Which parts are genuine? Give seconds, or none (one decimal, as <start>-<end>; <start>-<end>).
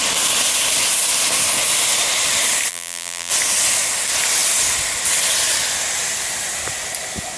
0.0-2.7; 3.3-7.4